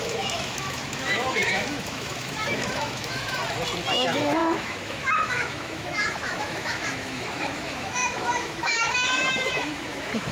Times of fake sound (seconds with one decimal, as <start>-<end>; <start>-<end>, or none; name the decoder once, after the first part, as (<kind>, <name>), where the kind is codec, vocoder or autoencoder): 0.0-3.4 (autoencoder, DAC-VAE); 3.9-10.3